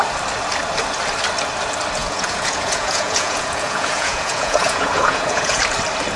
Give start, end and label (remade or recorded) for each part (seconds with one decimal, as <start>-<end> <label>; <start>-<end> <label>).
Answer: 0.0-2.0 recorded; 2.0-5.6 remade; 5.6-6.2 recorded